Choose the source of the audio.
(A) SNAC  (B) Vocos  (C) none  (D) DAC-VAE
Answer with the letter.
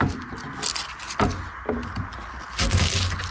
C